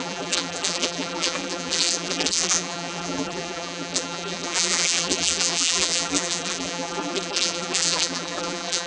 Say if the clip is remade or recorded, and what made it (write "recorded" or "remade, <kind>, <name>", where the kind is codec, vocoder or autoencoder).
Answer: remade, vocoder, BigVGAN v2